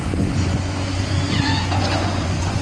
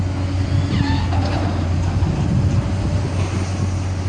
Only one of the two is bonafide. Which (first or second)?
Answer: second